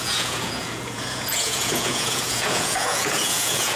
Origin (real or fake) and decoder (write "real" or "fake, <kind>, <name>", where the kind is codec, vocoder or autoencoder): fake, vocoder, Vocos